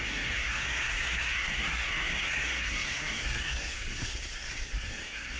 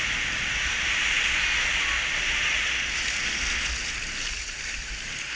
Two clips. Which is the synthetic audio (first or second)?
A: first